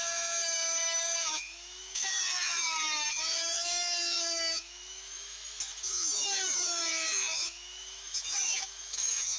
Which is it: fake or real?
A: fake